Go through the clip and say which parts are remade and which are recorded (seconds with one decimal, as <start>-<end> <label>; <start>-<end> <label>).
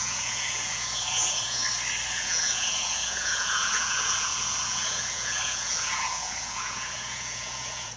0.0-1.6 remade; 1.6-2.1 recorded; 2.1-8.0 remade